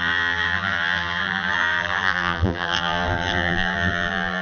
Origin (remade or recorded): remade